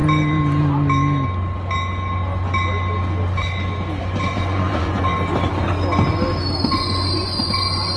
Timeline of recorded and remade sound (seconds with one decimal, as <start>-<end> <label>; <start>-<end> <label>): 0.0-4.0 recorded; 4.0-5.1 remade; 5.1-6.6 recorded; 6.6-8.0 remade